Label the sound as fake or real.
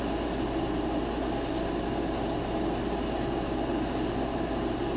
real